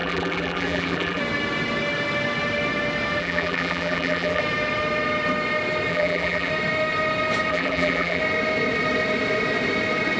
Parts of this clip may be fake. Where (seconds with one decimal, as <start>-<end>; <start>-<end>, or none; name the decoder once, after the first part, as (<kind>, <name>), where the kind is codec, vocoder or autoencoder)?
0.0-1.2 (vocoder, BigVGAN v2); 3.2-4.4; 5.9-6.5; 7.5-8.2